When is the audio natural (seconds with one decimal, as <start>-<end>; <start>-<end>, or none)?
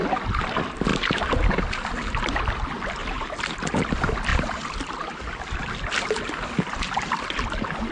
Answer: 0.0-0.9; 1.5-3.0; 3.7-7.9